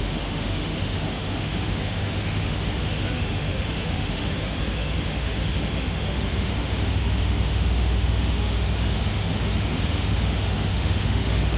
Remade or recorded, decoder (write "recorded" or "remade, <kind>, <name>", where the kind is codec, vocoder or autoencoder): remade, autoencoder, DAC-VAE